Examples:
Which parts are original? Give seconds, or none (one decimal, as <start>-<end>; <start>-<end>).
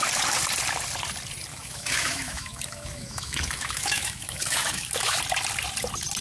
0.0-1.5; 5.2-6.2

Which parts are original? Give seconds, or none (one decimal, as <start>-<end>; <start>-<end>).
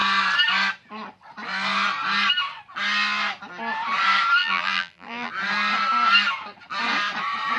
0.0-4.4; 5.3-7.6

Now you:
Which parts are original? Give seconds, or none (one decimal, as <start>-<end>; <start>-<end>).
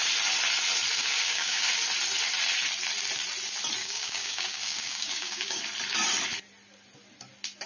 0.0-1.0; 1.7-3.8; 5.6-7.7